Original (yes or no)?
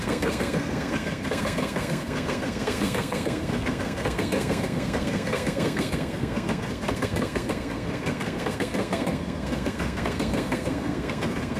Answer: no